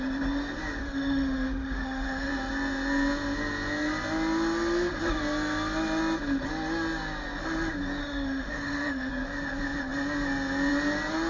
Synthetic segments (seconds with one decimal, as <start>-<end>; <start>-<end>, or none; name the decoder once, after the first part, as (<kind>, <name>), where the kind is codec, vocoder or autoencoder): 0.8-2.3 (autoencoder, DAC-VAE); 8.0-9.1